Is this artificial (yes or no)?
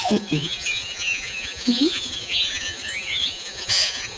yes